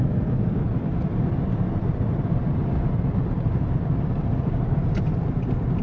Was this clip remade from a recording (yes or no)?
no